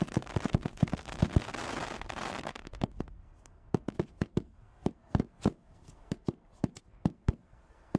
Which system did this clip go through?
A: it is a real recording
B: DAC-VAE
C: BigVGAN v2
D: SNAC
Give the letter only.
D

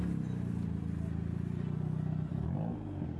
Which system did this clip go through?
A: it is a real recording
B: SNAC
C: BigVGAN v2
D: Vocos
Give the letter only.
A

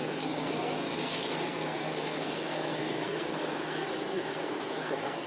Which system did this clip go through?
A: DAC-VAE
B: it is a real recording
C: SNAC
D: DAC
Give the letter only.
C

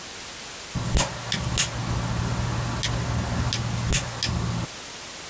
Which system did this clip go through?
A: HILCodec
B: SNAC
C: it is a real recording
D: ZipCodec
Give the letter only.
C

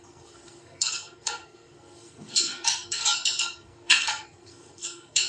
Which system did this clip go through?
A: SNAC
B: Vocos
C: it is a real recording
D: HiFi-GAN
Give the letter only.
A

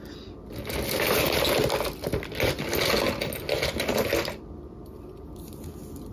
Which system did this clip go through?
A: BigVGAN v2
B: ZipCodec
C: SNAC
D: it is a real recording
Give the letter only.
D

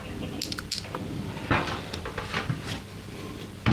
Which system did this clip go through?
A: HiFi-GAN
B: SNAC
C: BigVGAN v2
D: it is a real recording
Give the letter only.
D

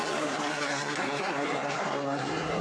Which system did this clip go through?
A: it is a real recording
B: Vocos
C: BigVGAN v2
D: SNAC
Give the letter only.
D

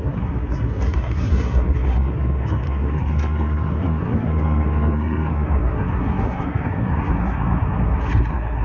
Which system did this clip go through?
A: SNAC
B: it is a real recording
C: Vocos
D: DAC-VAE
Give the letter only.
A